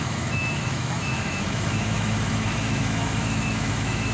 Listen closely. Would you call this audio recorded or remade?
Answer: remade